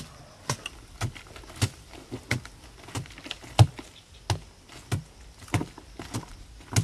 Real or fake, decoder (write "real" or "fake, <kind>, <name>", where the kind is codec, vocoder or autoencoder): real